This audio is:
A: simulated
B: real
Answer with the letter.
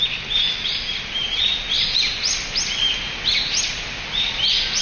B